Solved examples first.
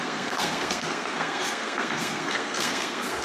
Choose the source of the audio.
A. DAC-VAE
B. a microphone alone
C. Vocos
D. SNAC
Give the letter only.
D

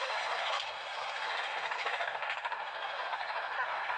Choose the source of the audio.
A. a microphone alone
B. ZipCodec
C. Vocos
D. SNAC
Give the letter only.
D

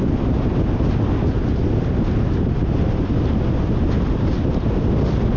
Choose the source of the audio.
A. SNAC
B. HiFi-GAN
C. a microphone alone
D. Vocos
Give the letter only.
C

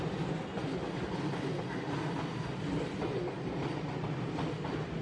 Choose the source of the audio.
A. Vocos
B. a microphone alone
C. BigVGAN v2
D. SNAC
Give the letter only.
B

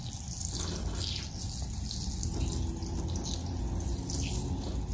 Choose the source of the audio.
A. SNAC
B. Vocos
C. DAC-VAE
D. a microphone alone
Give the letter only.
D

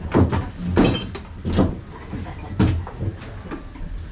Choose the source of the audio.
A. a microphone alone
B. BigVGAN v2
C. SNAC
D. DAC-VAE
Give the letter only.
A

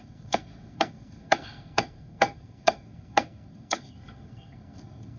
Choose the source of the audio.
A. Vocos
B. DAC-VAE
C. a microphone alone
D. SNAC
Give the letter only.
D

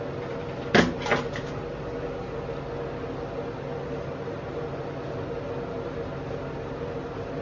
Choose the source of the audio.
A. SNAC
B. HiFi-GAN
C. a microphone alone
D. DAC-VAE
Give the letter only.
C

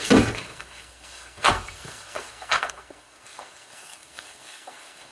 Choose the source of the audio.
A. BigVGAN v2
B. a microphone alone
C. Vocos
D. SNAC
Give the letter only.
D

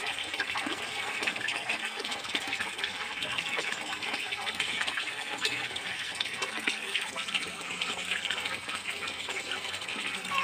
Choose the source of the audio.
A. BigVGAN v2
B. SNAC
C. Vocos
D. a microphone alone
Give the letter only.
B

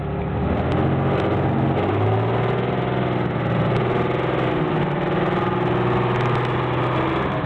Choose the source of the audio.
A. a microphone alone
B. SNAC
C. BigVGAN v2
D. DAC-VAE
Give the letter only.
A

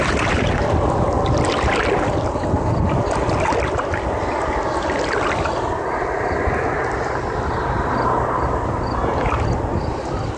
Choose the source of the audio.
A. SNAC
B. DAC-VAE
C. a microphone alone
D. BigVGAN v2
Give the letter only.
C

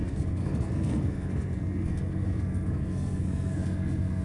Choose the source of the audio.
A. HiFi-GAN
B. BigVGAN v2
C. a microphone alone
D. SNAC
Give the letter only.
D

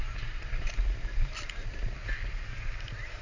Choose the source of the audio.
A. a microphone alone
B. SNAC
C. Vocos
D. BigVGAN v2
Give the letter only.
A